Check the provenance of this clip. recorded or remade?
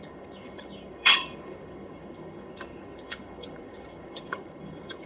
remade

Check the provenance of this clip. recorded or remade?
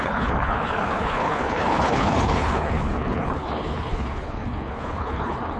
remade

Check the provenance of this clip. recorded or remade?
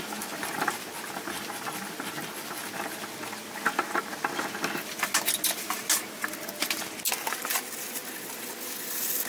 recorded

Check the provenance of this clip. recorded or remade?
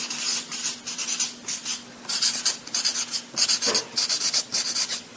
recorded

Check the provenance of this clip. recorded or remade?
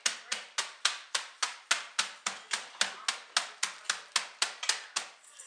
recorded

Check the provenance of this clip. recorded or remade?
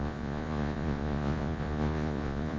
remade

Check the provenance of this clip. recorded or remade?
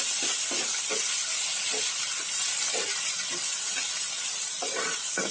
recorded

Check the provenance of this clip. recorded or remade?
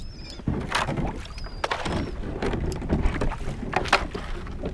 recorded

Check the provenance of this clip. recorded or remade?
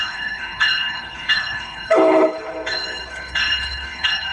remade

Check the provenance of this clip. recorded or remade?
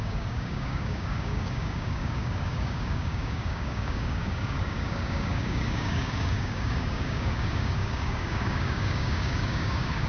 remade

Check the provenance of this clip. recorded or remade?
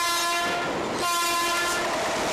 recorded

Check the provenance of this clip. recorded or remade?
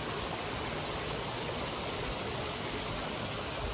recorded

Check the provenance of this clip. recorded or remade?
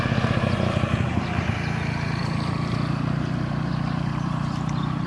remade